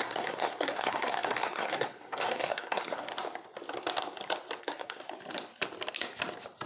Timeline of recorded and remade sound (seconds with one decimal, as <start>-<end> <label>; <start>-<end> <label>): 0.0-3.1 remade; 3.1-4.6 recorded; 4.6-5.0 remade; 5.0-6.7 recorded